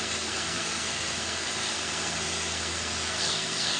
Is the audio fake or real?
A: fake